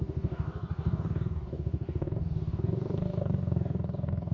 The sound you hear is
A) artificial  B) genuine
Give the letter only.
A